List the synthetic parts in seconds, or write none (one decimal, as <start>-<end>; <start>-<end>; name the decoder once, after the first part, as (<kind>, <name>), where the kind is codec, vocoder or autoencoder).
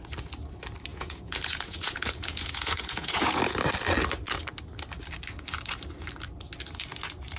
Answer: 0.9-3.4 (vocoder, Vocos)